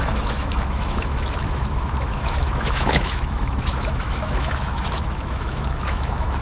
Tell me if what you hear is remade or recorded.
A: remade